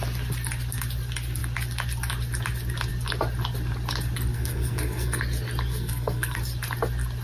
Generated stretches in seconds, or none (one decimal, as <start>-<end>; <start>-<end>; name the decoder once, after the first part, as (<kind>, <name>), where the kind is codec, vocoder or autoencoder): 4.3-5.2 (codec, SNAC); 5.7-6.4